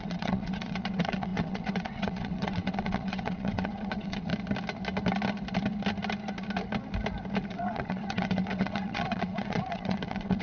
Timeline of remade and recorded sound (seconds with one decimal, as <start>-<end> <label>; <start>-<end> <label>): 0.0-4.3 remade; 4.3-7.5 recorded; 7.5-10.4 remade